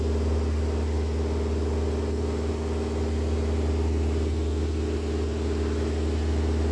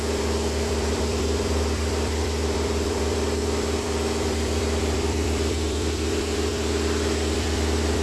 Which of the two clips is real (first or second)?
first